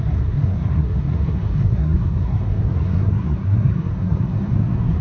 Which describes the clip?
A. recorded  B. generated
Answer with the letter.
B